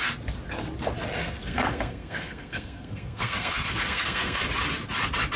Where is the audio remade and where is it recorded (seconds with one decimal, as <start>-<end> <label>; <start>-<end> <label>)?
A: 0.0-1.2 recorded; 1.2-4.4 remade; 4.4-5.4 recorded